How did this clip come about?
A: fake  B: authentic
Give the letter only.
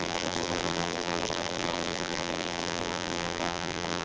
A